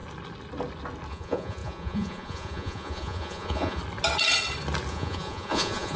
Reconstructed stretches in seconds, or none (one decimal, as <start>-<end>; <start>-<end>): 1.1-3.8; 4.9-6.0